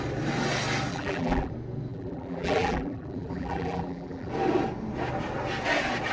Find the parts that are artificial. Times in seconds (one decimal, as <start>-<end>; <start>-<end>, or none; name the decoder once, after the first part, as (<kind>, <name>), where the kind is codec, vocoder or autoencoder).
0.9-1.5 (vocoder, BigVGAN v2); 1.9-4.3

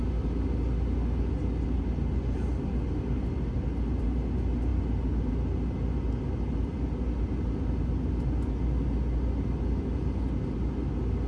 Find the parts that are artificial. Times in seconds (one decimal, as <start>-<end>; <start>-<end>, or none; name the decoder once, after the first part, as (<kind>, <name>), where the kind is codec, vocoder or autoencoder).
none

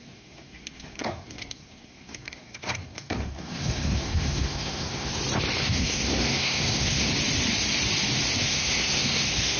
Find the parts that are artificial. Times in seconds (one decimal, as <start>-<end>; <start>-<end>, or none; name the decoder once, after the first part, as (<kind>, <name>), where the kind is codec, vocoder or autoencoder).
0.0-5.1 (codec, SNAC); 5.6-7.1; 8.4-9.6

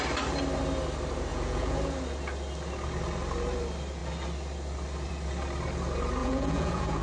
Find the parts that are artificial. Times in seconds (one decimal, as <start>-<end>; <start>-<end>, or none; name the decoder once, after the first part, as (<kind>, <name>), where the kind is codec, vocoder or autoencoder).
1.3-1.8 (vocoder, Vocos); 6.2-7.0

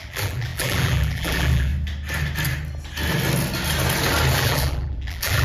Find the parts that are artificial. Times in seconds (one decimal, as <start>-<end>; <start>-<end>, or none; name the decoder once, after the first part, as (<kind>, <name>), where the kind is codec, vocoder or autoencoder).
0.0-1.7 (vocoder, BigVGAN v2); 4.3-5.4